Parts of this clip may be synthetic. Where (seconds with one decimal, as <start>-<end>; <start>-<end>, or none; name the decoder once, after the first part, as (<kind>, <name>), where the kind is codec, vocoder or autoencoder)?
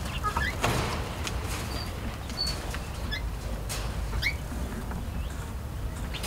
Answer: none